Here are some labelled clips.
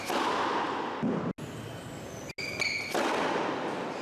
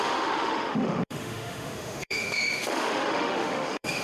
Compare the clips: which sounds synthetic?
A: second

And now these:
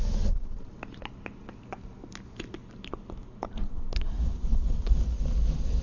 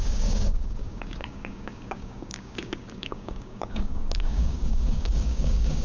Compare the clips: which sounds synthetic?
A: second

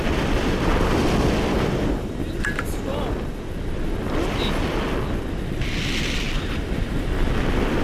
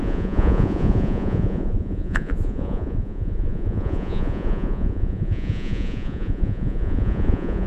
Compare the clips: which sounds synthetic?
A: second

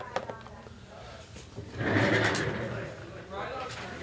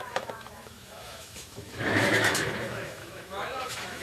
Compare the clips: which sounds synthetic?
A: second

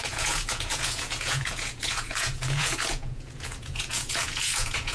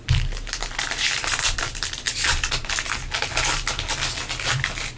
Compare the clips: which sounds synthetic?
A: first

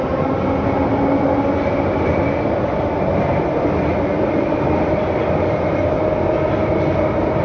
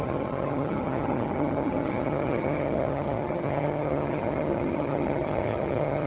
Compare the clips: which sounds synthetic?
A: second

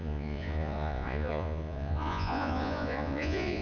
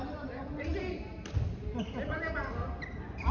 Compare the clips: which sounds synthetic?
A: first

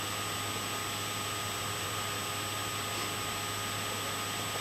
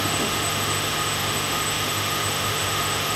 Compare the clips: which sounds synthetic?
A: second